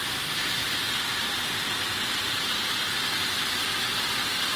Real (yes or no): yes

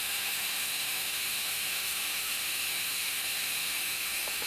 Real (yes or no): no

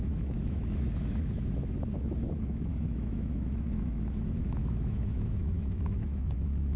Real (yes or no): no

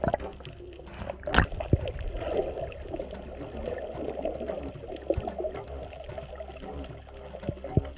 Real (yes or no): yes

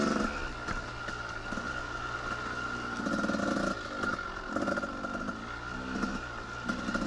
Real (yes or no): yes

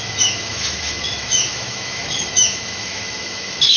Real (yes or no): no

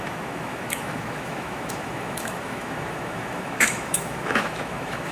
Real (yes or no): no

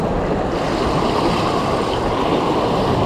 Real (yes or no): yes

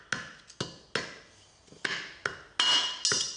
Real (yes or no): yes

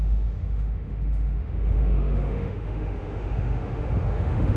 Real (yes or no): no